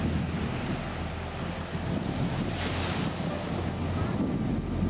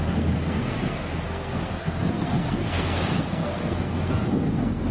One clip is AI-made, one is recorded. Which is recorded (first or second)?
first